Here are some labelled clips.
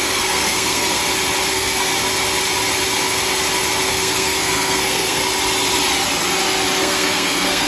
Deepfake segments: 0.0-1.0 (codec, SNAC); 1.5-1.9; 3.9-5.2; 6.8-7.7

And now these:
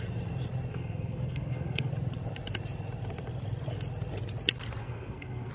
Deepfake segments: 0.7-1.9 (codec, SNAC); 4.8-5.5

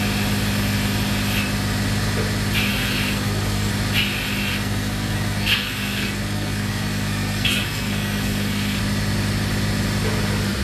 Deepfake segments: 2.7-3.7 (codec, SNAC); 4.5-8.8

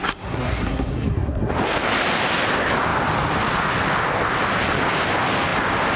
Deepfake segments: 0.0-1.5 (codec, SNAC)

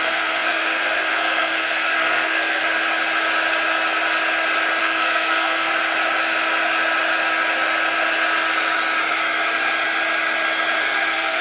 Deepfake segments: 0.0-2.6 (codec, SNAC); 4.8-5.7; 10.8-11.4

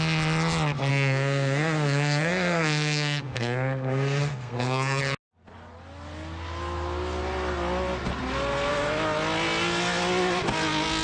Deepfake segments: 0.9-5.0 (codec, SNAC)

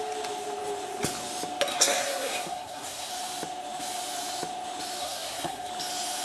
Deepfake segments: 1.7-3.1 (codec, SNAC); 5.0-5.7

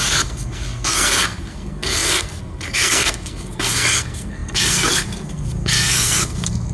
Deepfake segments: 0.0-6.7 (codec, SNAC)